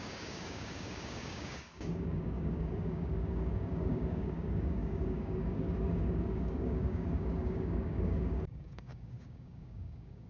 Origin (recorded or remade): remade